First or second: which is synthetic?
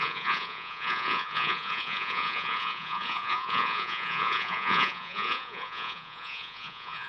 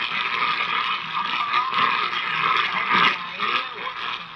first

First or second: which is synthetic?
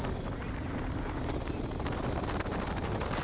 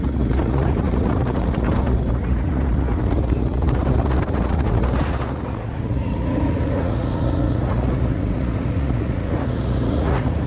second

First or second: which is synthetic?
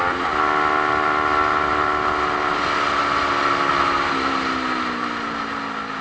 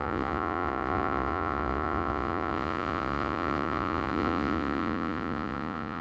second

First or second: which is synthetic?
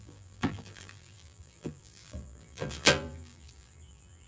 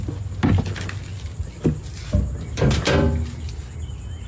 first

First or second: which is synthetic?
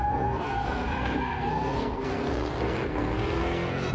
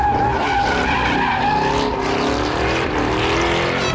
first